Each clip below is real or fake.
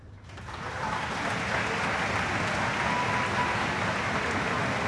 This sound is real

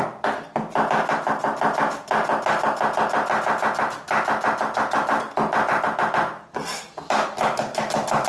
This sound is real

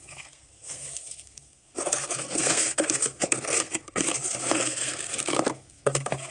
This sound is fake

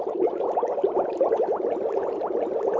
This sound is real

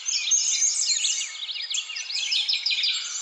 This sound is real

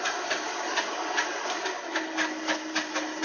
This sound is real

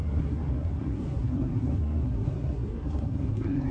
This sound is fake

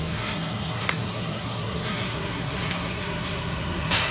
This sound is fake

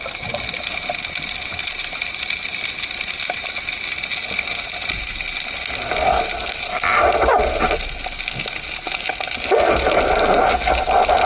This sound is real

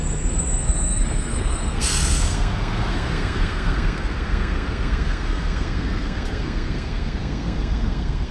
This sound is fake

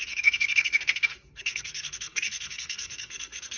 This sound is fake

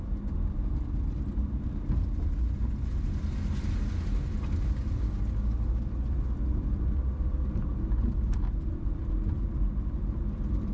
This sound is real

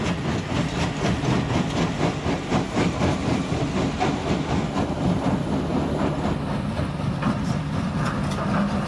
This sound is real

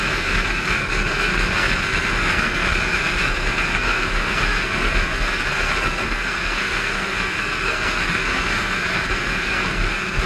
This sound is fake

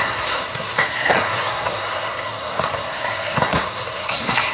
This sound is fake